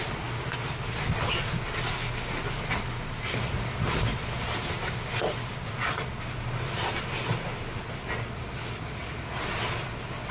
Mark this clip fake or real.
real